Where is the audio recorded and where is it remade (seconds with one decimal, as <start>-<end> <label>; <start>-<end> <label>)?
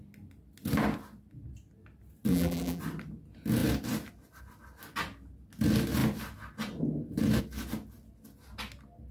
0.0-2.3 recorded; 2.3-2.8 remade; 2.8-9.1 recorded